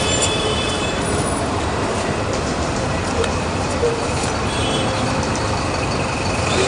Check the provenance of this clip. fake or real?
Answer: fake